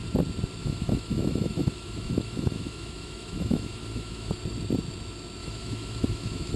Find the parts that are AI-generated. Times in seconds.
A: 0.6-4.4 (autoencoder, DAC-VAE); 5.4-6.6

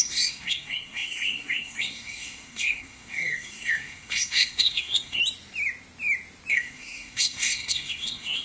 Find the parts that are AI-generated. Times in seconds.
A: 0.0-5.2 (codec, SNAC); 6.5-8.4

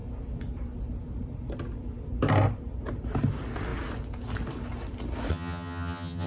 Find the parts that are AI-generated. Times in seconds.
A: 5.3-6.3 (vocoder, HiFi-GAN)